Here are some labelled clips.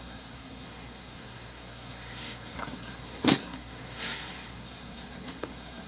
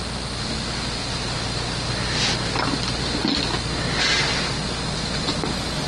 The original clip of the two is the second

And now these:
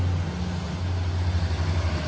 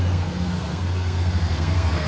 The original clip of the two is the first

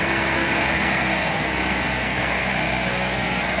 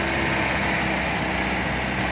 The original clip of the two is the second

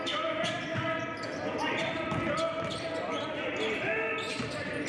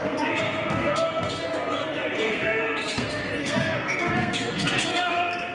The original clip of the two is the first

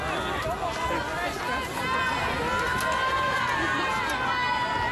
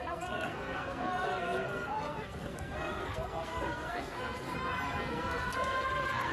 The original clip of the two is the first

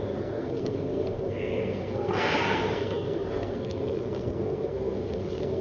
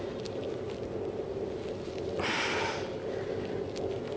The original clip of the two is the second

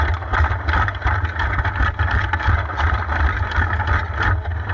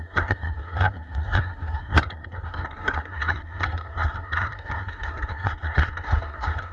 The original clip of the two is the first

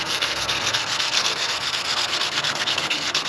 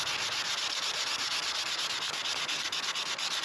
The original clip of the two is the second